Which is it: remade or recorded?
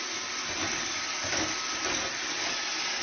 recorded